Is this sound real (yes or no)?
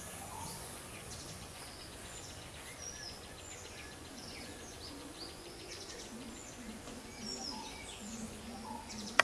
no